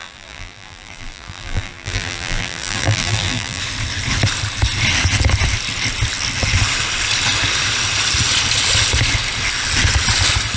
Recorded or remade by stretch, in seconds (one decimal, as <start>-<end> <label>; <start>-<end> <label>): 0.0-3.6 remade; 3.6-10.6 recorded